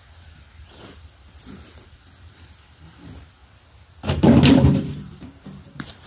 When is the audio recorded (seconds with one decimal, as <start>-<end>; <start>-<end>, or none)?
3.4-4.5